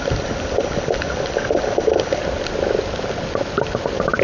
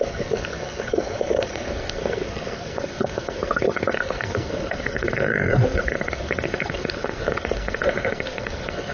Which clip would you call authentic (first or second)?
first